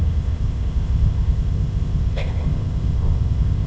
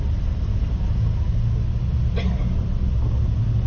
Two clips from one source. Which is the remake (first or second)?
first